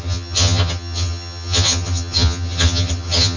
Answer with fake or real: fake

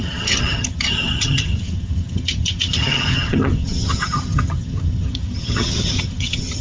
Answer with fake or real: fake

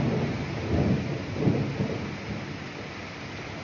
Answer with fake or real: real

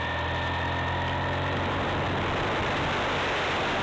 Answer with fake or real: real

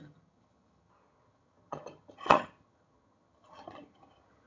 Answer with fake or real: fake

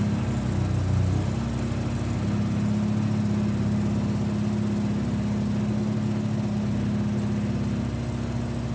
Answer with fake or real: real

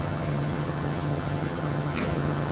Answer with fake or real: fake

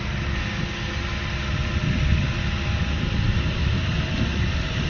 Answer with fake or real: real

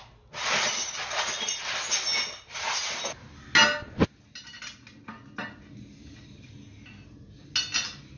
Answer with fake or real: real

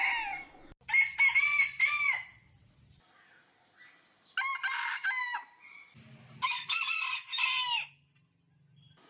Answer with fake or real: real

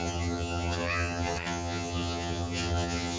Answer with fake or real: fake